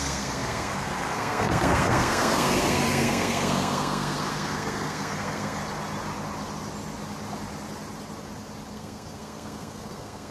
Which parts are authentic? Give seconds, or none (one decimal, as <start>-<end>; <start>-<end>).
5.6-8.7